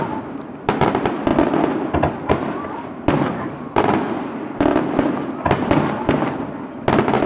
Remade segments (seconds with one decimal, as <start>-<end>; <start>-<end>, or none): none